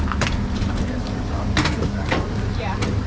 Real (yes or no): yes